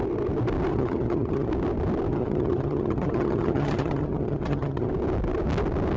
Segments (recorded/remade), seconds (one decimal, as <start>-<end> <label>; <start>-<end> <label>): 0.0-0.7 recorded; 0.7-1.5 remade; 1.5-2.1 recorded; 2.1-4.9 remade; 4.9-6.0 recorded